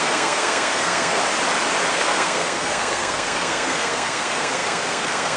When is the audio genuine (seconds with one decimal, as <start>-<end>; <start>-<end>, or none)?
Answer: 1.2-1.9